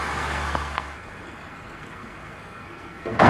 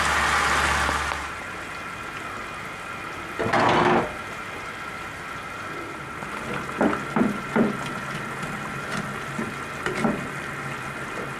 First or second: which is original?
second